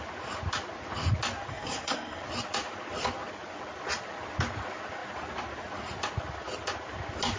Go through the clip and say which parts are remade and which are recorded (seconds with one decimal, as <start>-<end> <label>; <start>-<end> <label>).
0.0-1.5 recorded; 1.5-2.2 remade; 2.2-7.4 recorded